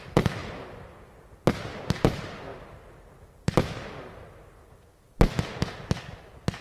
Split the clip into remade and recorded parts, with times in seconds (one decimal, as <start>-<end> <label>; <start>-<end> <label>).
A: 0.0-6.6 recorded